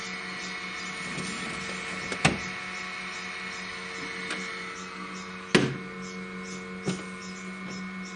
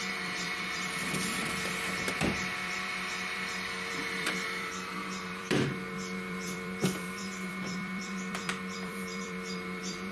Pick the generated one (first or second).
second